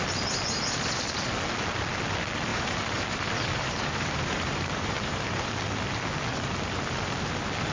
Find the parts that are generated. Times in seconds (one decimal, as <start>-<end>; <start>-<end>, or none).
2.5-5.5